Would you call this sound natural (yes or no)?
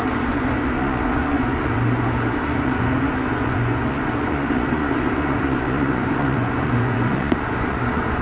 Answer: no